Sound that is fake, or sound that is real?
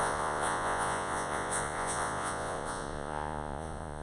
fake